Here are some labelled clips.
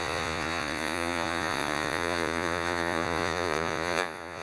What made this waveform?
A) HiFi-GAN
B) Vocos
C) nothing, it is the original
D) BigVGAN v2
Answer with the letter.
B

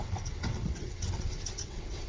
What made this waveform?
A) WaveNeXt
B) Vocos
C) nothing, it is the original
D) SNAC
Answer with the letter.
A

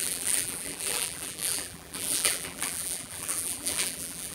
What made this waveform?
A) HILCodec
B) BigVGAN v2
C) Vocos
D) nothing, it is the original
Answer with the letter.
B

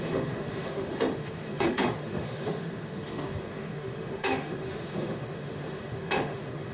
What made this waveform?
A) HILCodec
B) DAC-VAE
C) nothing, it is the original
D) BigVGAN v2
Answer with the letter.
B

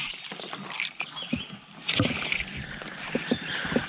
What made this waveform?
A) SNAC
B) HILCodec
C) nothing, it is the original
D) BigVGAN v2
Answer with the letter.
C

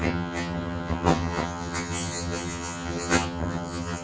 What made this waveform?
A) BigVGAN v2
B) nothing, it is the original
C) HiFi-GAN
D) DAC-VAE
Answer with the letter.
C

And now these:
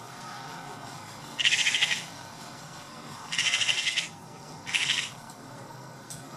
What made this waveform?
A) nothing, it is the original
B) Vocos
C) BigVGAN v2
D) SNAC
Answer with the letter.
D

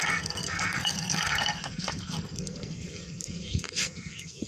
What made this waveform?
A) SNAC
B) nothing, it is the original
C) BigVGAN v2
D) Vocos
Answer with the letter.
A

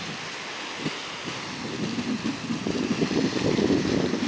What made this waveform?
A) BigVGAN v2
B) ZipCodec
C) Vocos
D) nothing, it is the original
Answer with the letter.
D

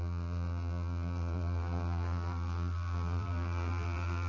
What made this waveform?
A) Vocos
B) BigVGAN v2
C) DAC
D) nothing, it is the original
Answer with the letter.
B